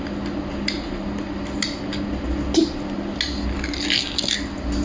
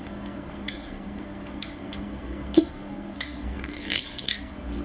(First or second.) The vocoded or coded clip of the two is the second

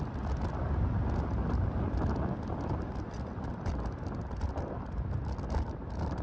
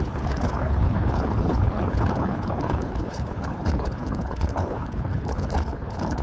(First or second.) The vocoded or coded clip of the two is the second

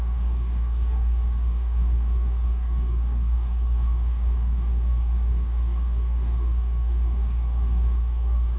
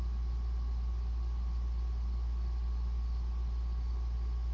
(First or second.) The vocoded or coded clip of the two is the first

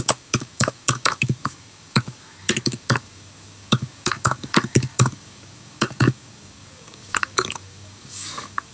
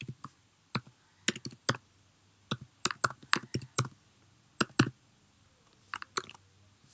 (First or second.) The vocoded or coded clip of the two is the first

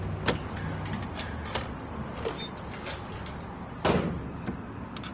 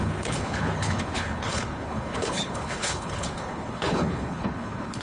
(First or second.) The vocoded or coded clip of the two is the second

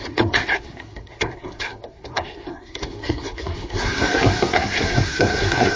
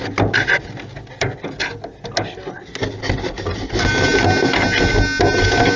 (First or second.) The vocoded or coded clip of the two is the first